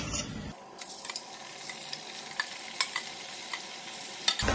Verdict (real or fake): real